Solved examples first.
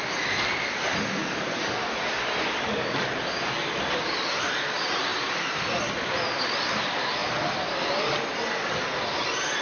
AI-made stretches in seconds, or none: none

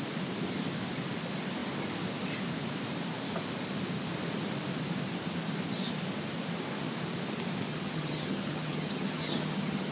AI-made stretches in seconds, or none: 7.7-9.9

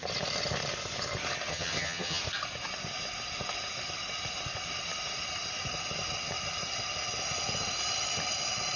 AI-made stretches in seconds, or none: 1.5-2.2

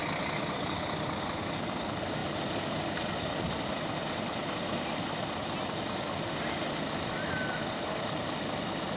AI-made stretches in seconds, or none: none

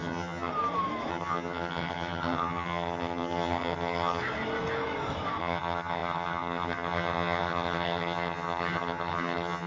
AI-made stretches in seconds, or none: 0.0-0.5; 1.1-4.2; 5.4-9.7

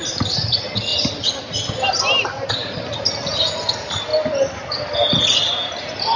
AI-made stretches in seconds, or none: none

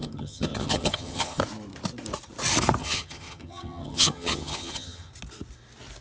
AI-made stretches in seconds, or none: 0.0-1.4; 2.8-5.1

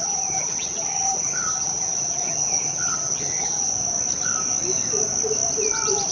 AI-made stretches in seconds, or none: 0.0-3.7